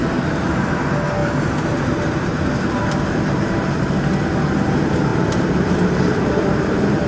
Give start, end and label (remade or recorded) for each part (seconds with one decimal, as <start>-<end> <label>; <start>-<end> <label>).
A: 0.0-0.7 remade; 0.7-1.2 recorded; 1.2-4.0 remade; 4.0-5.1 recorded; 5.1-7.1 remade